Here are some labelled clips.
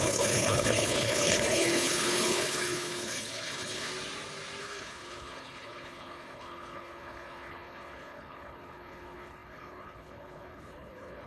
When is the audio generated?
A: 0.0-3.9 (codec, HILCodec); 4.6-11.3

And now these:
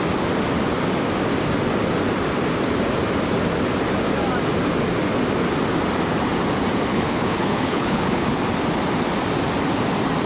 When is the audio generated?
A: 6.9-8.4 (codec, HILCodec)